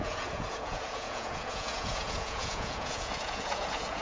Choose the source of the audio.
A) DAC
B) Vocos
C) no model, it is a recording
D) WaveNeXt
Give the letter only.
B